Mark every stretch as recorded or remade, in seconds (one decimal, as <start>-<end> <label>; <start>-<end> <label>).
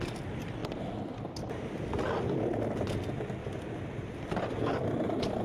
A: 0.0-0.6 recorded; 0.6-1.3 remade; 1.3-3.4 recorded; 3.4-4.4 remade; 4.4-5.4 recorded